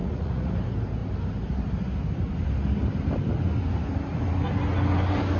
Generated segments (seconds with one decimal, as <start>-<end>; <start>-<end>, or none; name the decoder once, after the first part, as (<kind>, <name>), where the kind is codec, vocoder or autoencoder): 0.0-0.5 (vocoder, Vocos)